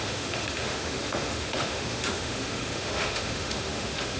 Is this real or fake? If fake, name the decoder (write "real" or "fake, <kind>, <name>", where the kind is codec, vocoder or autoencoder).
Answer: fake, autoencoder, DAC-VAE